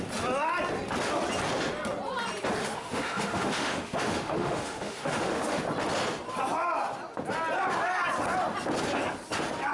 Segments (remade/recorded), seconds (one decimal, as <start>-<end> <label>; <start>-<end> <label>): 0.0-2.6 recorded; 2.6-5.6 remade; 5.6-9.7 recorded